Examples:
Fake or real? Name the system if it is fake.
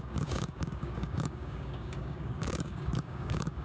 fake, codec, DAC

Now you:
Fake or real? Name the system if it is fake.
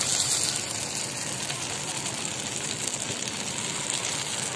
real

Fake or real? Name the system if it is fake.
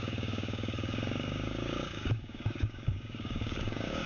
fake, codec, DAC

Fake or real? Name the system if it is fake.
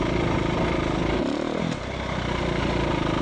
real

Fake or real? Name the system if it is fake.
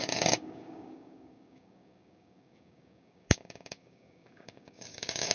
fake, codec, DAC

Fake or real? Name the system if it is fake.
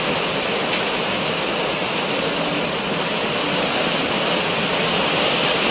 real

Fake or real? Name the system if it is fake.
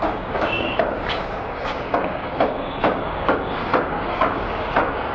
fake, codec, DAC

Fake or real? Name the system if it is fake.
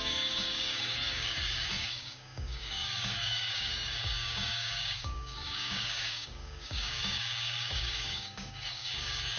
fake, codec, DAC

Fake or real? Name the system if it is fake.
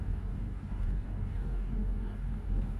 fake, codec, DAC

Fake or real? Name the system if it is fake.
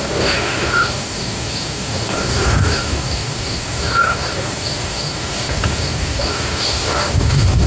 fake, codec, DAC